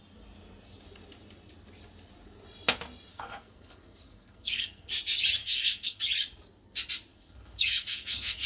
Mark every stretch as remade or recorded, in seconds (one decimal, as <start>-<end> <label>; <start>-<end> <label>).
0.0-3.1 recorded; 3.1-4.9 remade; 4.9-5.4 recorded; 5.4-6.0 remade; 6.0-7.1 recorded; 7.1-8.5 remade